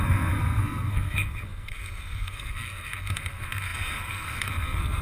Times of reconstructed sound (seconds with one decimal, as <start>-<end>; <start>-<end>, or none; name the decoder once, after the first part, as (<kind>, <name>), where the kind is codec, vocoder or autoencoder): 0.0-5.0 (codec, SNAC)